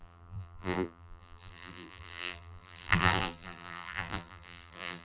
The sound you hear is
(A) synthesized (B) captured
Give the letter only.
A